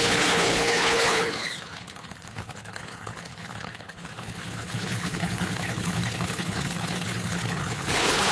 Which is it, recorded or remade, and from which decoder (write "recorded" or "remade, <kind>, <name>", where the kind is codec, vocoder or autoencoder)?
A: remade, codec, HILCodec